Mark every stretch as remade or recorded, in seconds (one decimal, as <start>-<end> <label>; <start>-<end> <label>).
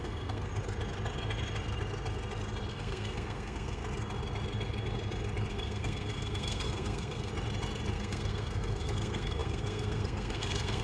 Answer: 0.0-0.5 remade; 0.5-2.7 recorded; 2.7-3.8 remade; 3.8-5.5 recorded; 5.5-7.3 remade; 7.3-7.9 recorded; 7.9-10.8 remade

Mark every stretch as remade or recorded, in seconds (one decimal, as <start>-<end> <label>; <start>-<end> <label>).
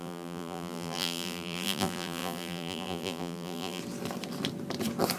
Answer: 0.0-3.8 remade; 3.8-5.2 recorded